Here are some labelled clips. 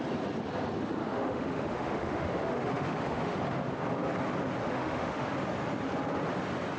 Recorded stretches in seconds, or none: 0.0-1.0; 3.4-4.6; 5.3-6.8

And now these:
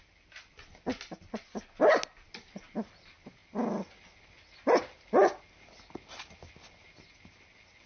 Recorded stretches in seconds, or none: 0.0-7.9

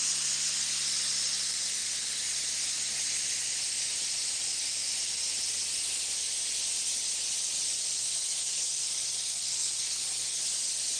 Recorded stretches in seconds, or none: 0.0-7.9; 10.4-11.0

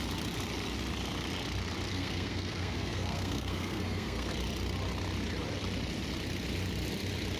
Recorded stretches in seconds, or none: 0.0-1.9; 4.3-7.4

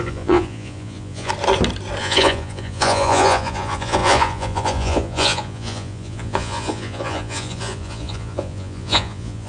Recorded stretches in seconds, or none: 1.3-2.0

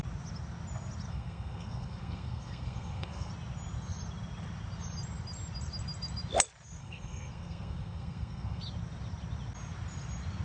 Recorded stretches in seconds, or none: 0.0-1.1; 3.3-6.8; 8.6-10.4